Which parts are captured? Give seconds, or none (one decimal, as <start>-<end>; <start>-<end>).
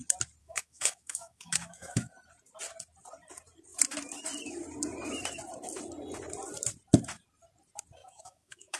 0.0-0.4; 2.1-8.0